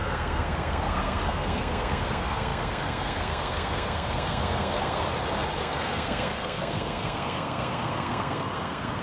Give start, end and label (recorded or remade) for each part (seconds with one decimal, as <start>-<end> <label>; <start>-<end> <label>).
0.0-5.1 remade; 5.1-5.6 recorded; 5.6-9.0 remade